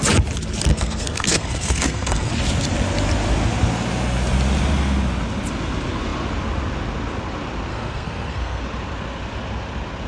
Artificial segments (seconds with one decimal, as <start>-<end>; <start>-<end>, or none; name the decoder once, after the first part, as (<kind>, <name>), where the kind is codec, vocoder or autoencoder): 0.7-2.3 (codec, SNAC); 7.7-8.6